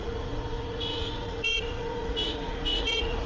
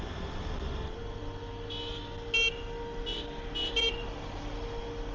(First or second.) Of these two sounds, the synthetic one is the first